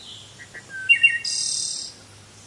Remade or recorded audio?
recorded